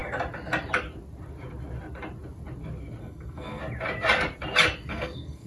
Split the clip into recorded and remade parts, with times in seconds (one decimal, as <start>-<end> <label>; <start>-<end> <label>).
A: 0.0-3.0 recorded; 3.0-3.6 remade; 3.6-4.9 recorded; 4.9-5.5 remade